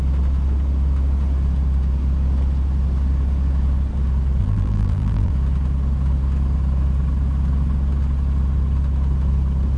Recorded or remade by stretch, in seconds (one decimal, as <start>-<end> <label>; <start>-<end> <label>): 0.0-4.4 recorded; 4.4-5.3 remade; 5.3-9.8 recorded